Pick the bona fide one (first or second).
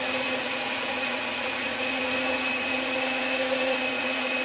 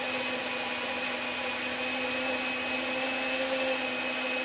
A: second